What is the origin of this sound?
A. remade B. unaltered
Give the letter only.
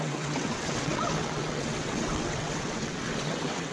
A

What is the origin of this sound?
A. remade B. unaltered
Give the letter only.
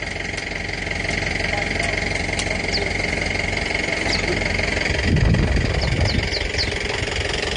B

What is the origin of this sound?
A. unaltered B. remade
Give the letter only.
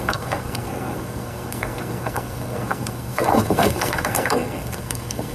B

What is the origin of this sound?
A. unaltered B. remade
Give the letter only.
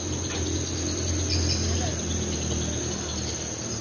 A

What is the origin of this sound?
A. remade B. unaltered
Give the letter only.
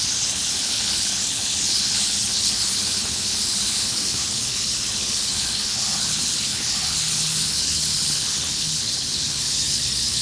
A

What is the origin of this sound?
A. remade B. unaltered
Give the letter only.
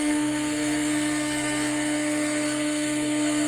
A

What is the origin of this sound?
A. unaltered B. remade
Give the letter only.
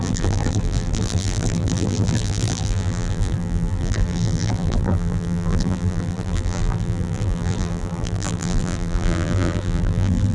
B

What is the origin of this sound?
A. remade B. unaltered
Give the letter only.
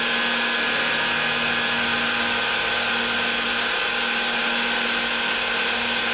B